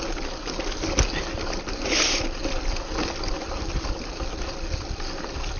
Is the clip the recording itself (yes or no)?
yes